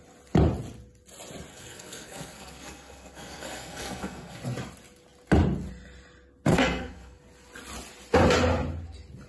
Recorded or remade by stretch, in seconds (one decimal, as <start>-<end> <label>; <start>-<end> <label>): 0.0-1.5 recorded; 1.5-4.4 remade; 4.4-6.5 recorded; 6.5-7.2 remade; 7.2-9.3 recorded